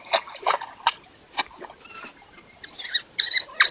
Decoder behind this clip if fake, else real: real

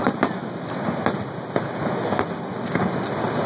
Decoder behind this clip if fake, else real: real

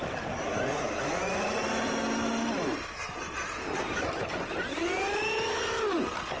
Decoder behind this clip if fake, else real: real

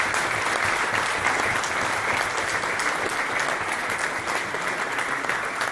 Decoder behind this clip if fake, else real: real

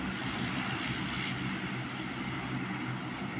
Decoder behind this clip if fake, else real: real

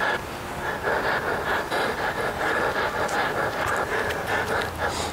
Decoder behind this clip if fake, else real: real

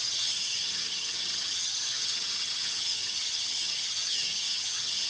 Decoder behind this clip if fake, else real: fake, vocoder, HiFi-GAN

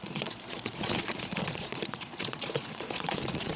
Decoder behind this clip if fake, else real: fake, vocoder, Vocos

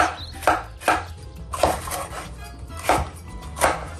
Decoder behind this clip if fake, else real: real